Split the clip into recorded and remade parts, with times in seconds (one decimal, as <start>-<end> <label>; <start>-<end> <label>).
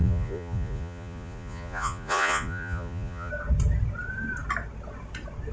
0.0-3.3 remade; 3.3-5.5 recorded